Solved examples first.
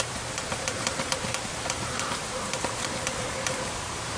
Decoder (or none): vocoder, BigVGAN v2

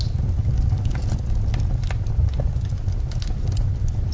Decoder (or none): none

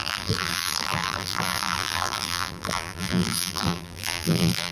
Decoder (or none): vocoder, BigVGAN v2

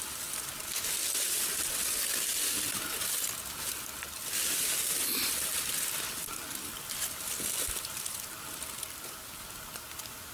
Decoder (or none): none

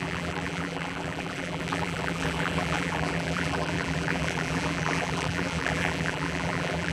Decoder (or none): vocoder, BigVGAN v2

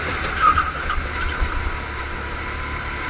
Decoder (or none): none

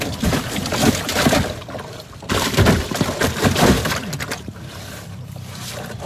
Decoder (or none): vocoder, BigVGAN v2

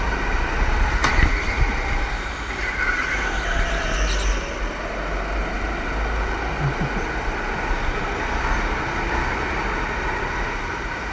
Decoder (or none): none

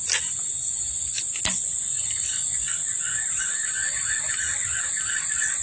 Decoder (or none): none